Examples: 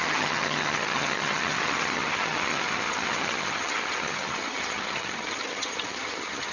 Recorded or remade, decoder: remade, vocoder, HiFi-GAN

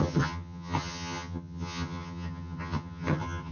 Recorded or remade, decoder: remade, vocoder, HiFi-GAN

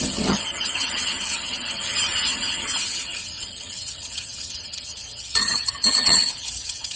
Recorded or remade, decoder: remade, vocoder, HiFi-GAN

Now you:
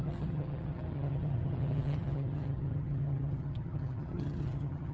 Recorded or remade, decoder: remade, vocoder, HiFi-GAN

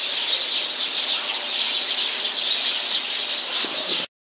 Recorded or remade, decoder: recorded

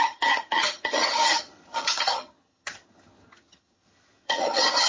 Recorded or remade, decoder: remade, vocoder, HiFi-GAN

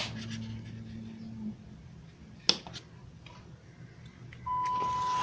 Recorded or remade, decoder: recorded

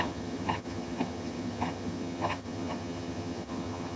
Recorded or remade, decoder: remade, vocoder, HiFi-GAN